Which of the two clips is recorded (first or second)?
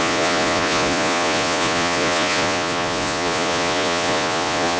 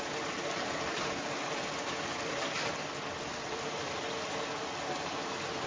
second